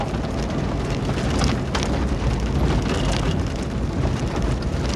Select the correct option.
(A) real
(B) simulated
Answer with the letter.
A